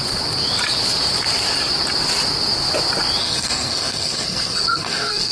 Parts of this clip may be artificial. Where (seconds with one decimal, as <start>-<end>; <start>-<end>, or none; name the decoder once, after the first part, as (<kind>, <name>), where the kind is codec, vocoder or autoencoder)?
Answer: 3.2-5.3 (codec, SNAC)